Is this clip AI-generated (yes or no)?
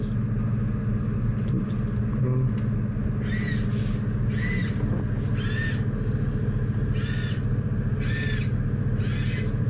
no